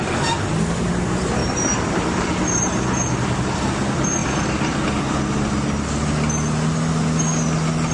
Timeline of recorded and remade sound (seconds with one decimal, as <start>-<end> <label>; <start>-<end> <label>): 0.0-1.4 recorded; 1.4-2.3 remade; 2.3-7.9 recorded